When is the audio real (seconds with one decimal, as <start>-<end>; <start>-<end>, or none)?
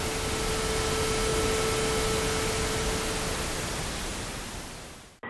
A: 0.0-5.3